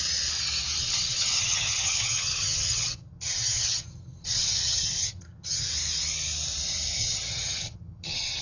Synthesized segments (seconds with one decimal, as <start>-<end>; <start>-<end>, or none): 0.8-5.7; 7.0-8.4

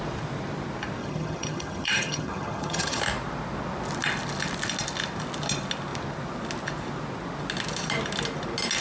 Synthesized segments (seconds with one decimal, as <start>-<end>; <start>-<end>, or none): 1.0-3.0

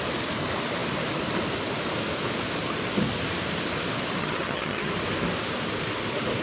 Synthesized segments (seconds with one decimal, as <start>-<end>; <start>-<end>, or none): 4.2-4.9

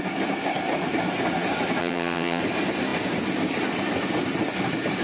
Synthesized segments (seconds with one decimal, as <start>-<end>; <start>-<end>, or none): 1.8-2.4

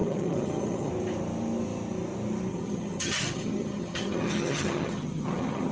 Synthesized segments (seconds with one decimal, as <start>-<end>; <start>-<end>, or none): 0.0-0.9; 2.5-5.7

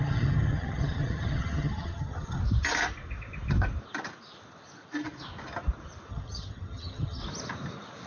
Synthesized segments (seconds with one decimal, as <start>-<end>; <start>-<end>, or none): 0.0-2.4; 6.1-7.2

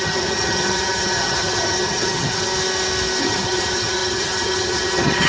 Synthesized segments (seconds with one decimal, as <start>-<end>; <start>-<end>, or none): 0.0-2.5; 3.2-5.3